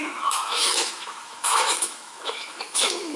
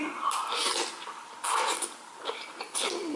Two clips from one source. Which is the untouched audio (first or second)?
second